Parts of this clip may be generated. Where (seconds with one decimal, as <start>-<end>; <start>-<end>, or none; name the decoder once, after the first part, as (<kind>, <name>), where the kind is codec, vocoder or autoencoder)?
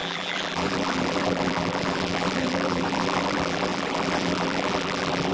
0.0-5.3 (vocoder, BigVGAN v2)